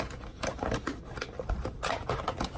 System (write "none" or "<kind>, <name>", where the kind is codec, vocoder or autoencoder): none